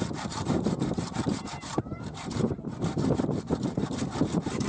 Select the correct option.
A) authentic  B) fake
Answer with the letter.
B